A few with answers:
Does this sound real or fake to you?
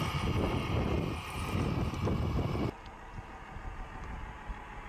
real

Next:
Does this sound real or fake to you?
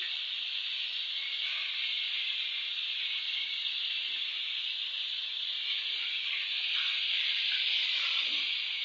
real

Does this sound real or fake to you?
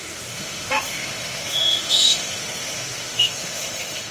fake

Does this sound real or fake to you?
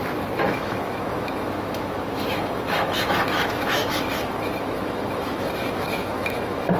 fake